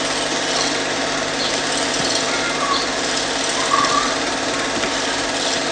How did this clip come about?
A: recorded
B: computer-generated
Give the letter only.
A